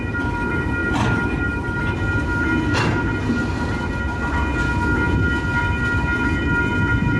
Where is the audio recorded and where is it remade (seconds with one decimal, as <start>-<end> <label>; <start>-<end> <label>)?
0.0-7.2 recorded